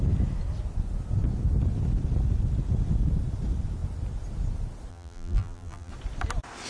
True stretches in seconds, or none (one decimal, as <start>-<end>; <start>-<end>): 0.0-4.9; 5.9-6.7